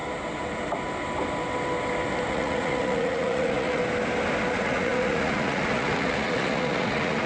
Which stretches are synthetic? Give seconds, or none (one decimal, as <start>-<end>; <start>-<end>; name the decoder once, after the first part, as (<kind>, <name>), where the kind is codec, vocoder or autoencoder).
2.3-3.8 (vocoder, Vocos); 4.5-7.3